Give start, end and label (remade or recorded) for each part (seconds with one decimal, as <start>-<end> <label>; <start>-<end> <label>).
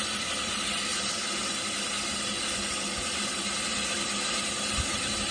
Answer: 0.0-5.3 recorded